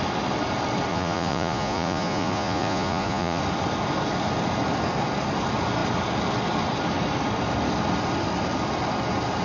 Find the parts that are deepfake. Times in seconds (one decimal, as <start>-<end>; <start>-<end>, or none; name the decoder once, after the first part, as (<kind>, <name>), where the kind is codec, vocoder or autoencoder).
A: 0.9-3.4 (vocoder, Vocos)